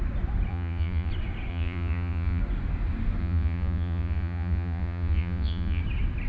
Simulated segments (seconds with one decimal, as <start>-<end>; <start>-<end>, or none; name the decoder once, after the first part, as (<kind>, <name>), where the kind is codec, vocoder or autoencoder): 0.5-1.1 (vocoder, Vocos); 1.5-2.4; 3.2-5.8

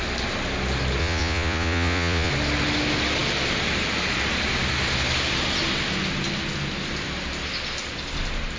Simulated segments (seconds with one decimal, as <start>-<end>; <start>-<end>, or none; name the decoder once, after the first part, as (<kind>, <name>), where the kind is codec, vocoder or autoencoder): 1.0-2.3 (vocoder, Vocos)

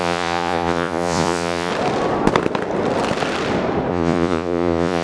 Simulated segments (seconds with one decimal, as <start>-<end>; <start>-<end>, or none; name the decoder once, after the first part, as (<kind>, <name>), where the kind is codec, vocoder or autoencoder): 0.0-1.7 (vocoder, Vocos); 3.9-5.0

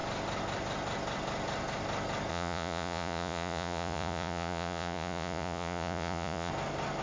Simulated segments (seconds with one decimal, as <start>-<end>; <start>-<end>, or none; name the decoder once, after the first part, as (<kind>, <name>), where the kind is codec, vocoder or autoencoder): 2.3-6.5 (vocoder, Vocos)

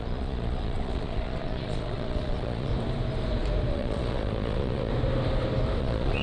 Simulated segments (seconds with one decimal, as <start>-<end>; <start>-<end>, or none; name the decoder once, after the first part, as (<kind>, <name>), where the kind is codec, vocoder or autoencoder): 0.0-2.7 (vocoder, Vocos); 3.7-4.9; 5.8-6.2

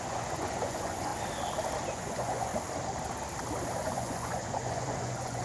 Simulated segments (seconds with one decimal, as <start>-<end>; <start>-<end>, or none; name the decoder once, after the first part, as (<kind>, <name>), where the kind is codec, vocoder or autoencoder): 0.0-1.1 (vocoder, Vocos); 1.9-2.5; 3.8-5.4

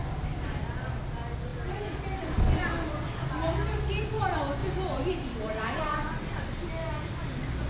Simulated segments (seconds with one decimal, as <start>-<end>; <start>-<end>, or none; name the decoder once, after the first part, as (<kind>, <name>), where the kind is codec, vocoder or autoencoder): none

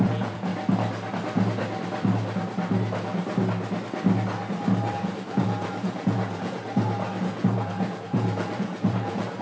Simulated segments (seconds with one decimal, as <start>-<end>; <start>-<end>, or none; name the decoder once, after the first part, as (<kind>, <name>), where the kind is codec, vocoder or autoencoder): 0.0-0.5 (vocoder, Vocos); 4.9-6.6; 7.2-9.4